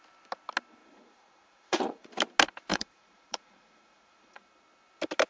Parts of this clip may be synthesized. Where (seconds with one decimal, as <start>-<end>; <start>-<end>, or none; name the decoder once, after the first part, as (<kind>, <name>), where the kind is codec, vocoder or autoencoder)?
0.8-2.1 (vocoder, Vocos); 2.7-4.4